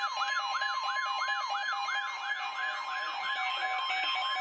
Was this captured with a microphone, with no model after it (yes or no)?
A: yes